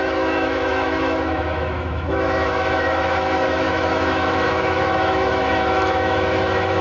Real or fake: fake